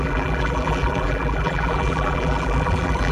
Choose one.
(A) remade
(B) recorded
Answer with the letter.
A